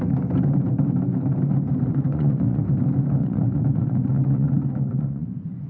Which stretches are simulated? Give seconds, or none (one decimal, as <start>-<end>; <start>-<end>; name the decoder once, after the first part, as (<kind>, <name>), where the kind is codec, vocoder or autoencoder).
1.9-2.6 (vocoder, Vocos); 3.2-5.7